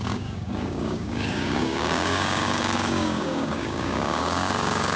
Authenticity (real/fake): fake